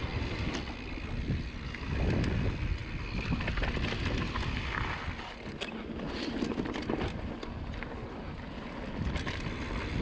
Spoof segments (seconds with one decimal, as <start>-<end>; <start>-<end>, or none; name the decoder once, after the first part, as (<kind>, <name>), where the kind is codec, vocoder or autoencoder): none